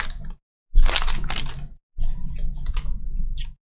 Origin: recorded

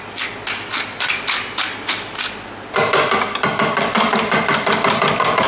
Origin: recorded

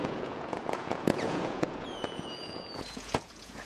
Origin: remade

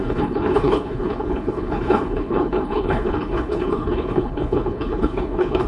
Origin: remade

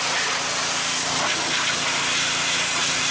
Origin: recorded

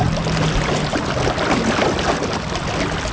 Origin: recorded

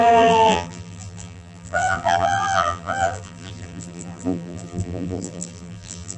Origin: remade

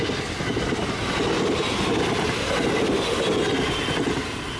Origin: recorded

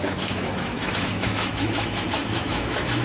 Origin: remade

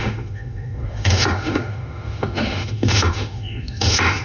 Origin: remade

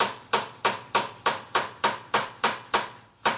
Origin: remade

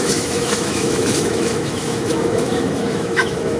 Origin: remade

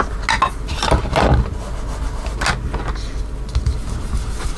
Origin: recorded